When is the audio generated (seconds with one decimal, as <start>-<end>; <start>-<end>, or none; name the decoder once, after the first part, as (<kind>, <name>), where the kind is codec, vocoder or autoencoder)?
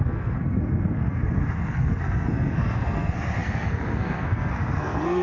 0.0-5.2 (codec, SNAC)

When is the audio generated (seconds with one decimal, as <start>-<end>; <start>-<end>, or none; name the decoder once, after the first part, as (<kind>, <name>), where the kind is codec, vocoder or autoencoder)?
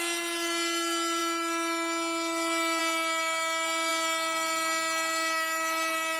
none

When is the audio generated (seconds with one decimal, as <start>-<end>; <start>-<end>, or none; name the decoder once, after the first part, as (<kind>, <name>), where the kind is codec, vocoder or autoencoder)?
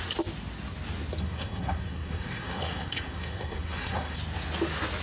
1.2-4.2 (codec, SNAC)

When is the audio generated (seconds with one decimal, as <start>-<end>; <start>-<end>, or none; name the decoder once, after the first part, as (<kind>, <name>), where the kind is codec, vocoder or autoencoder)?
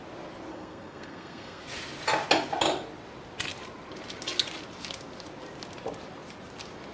0.5-1.6 (codec, SNAC)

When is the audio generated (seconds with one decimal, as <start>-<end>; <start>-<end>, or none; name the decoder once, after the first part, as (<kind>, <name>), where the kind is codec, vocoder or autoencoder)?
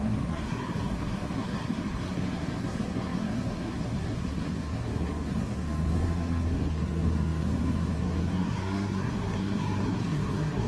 0.0-10.7 (codec, SNAC)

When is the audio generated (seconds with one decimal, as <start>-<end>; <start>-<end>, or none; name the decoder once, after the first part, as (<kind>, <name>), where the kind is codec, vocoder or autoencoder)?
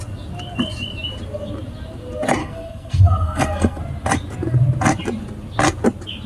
2.4-3.8 (codec, SNAC)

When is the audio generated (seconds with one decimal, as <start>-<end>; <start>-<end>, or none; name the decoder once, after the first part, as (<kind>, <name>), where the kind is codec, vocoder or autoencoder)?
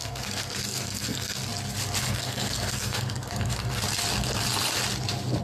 0.0-1.4 (codec, SNAC); 2.0-3.8